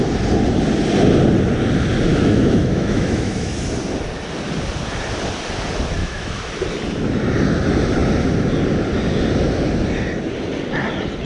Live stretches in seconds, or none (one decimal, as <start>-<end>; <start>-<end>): 0.0-2.1; 3.5-6.0; 6.5-11.3